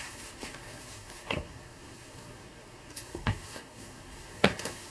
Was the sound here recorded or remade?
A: remade